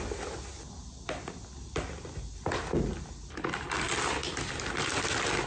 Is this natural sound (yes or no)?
yes